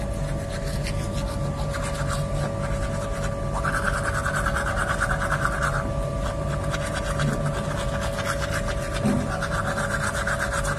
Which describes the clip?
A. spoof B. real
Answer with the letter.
B